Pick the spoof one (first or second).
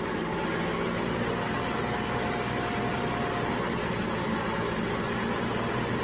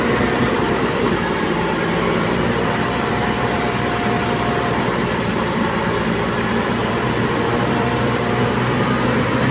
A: second